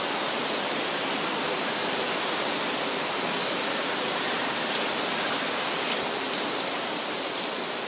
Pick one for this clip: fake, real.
real